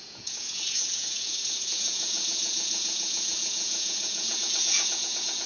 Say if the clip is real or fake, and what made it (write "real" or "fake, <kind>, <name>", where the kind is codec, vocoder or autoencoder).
fake, vocoder, Vocos